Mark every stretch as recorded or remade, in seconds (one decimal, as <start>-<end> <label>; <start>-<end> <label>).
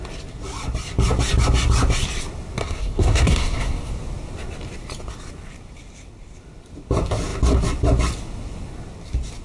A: 0.0-2.6 recorded; 2.6-3.9 remade; 3.9-9.4 recorded